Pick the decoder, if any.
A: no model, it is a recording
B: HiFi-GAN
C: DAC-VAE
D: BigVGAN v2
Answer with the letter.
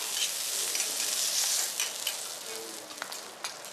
A